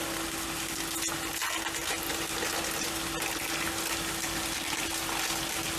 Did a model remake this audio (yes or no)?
no